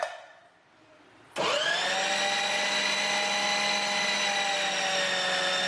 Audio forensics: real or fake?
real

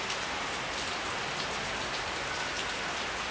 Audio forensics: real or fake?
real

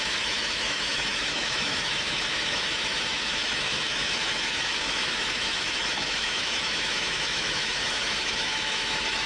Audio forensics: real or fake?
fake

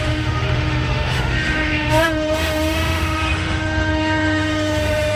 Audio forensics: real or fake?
fake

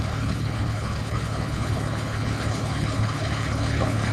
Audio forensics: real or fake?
fake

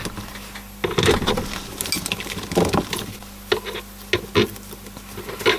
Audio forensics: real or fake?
real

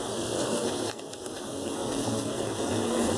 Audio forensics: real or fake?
fake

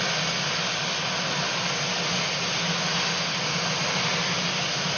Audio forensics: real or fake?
real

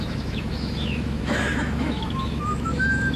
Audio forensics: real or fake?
fake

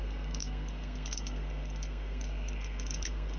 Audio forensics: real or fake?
fake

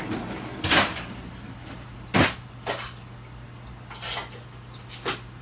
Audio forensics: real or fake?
real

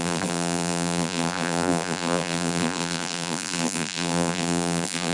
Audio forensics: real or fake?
fake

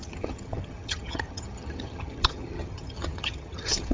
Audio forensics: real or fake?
fake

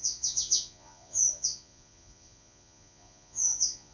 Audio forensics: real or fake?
fake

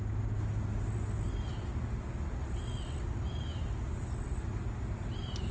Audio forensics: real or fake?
real